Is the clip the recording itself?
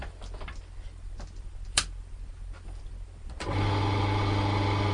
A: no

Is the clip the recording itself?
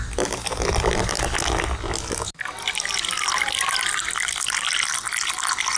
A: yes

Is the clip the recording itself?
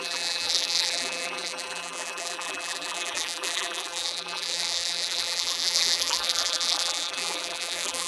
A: no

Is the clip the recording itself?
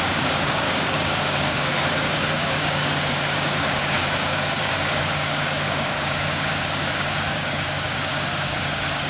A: no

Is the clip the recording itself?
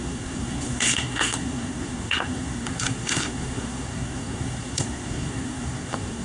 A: no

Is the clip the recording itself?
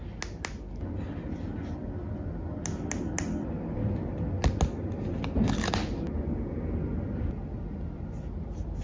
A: yes